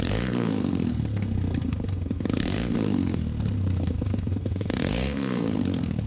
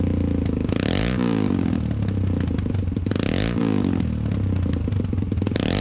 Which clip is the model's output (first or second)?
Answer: first